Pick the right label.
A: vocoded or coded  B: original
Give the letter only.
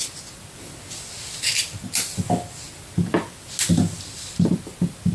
B